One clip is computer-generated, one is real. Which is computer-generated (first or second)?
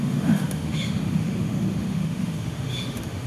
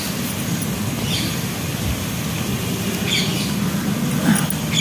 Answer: first